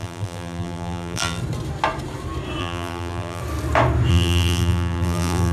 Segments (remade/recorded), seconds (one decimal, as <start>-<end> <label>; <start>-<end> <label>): 0.0-1.4 remade; 1.4-2.6 recorded; 2.6-3.4 remade; 3.4-4.1 recorded; 4.1-5.5 remade